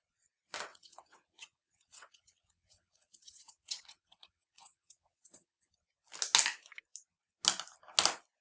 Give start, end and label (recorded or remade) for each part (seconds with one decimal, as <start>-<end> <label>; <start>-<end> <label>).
0.0-0.7 recorded; 0.7-5.7 remade; 5.7-8.4 recorded